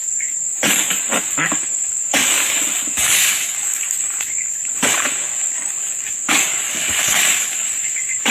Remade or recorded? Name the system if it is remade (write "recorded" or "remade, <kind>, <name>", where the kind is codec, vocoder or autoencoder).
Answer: remade, codec, DAC